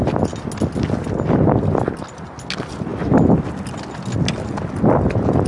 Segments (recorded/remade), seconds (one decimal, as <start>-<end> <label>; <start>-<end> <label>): 0.0-5.5 recorded